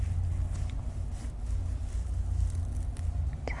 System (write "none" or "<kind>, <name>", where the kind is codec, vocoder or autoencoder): none